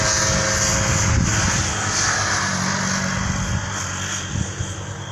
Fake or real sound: real